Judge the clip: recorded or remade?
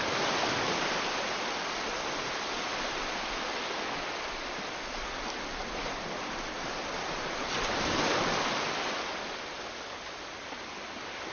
recorded